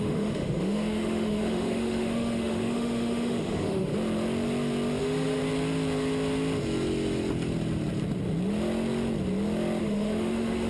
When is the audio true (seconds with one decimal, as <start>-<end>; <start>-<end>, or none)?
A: 3.9-5.0; 5.4-9.8